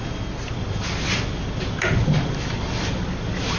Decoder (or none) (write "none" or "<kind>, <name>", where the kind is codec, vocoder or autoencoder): none